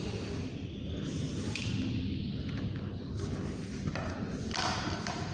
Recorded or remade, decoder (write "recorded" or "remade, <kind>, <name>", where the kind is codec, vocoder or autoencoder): recorded